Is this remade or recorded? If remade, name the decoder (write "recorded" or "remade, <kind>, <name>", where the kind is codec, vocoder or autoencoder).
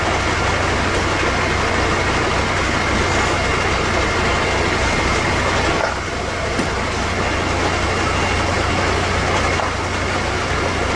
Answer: recorded